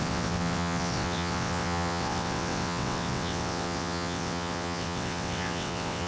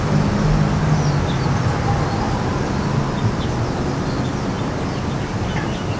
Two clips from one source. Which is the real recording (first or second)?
second